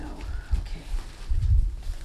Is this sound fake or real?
real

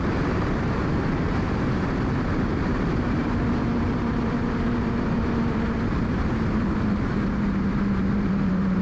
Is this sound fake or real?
fake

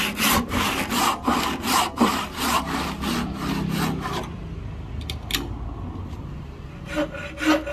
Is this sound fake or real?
real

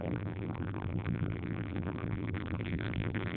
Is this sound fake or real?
fake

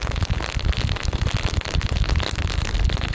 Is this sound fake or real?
real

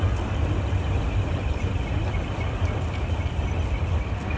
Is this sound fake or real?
real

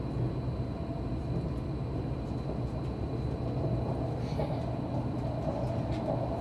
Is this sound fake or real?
real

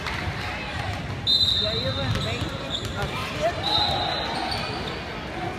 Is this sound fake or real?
real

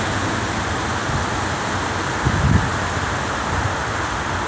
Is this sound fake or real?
real